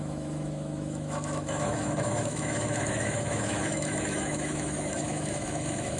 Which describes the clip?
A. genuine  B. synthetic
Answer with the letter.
B